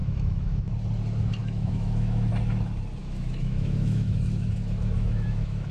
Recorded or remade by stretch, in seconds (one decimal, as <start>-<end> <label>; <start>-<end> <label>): 0.0-0.7 remade; 0.7-1.4 recorded; 1.4-2.3 remade; 2.3-3.0 recorded; 3.0-5.7 remade